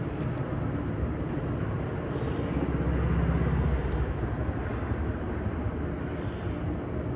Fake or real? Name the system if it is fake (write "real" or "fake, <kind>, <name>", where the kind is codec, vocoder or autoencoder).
real